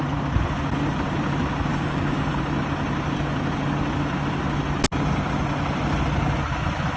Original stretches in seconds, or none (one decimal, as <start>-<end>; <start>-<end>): 0.0-1.7; 2.4-7.0